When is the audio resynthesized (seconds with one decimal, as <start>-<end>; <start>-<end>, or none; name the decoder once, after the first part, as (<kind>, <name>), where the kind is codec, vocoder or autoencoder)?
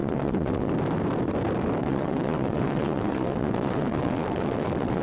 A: 0.0-0.7 (vocoder, WaveNeXt); 1.8-5.0